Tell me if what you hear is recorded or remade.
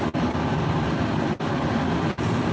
remade